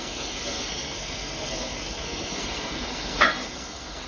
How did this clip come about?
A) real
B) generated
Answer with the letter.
B